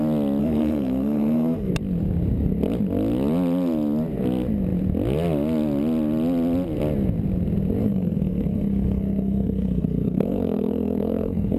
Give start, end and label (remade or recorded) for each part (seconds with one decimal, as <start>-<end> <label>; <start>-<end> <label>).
0.0-0.4 recorded; 0.4-1.7 remade; 1.7-7.8 recorded; 7.8-11.6 remade